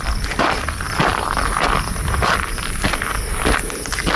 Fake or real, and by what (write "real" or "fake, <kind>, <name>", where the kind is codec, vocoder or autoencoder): fake, vocoder, BigVGAN v2